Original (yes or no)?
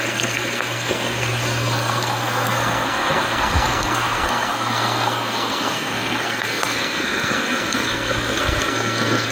no